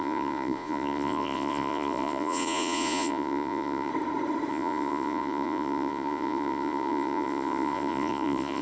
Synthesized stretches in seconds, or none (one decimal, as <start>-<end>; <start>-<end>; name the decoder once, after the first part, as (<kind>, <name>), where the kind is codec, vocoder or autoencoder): 0.0-3.9 (vocoder, Vocos); 4.5-8.6